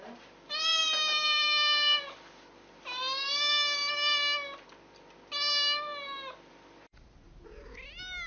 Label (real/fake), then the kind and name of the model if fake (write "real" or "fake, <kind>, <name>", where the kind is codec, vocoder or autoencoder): real